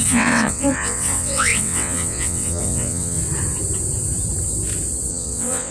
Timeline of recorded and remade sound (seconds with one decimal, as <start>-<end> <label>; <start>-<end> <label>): 0.0-3.2 remade; 3.2-5.1 recorded; 5.1-5.7 remade